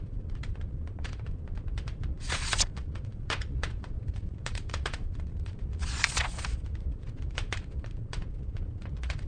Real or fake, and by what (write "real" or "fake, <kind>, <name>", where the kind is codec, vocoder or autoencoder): fake, vocoder, Vocos